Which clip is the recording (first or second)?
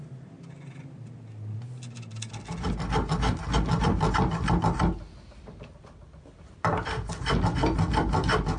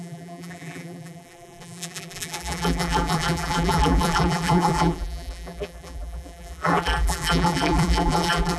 first